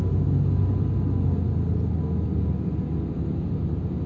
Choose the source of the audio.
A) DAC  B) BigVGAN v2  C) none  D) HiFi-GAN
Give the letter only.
C